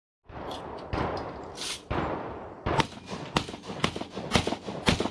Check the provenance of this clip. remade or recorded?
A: recorded